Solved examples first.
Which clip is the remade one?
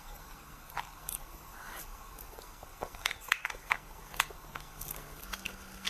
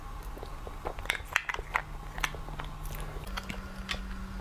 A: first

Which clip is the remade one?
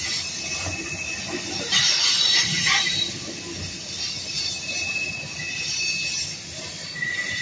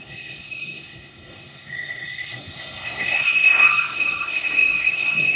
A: second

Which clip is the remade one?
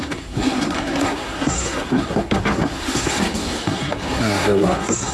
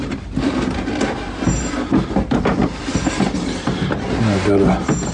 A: first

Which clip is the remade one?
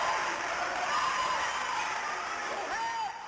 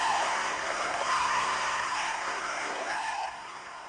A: second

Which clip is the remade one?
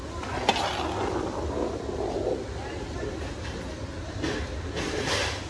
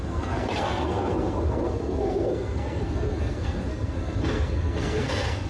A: second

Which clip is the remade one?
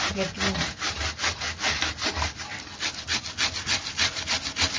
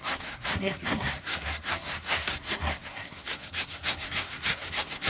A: second